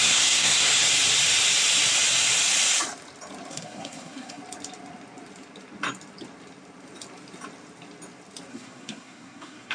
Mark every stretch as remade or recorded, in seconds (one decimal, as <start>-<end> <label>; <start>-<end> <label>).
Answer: 0.0-0.7 remade; 0.7-3.5 recorded; 3.5-4.4 remade; 4.4-8.5 recorded; 8.5-9.7 remade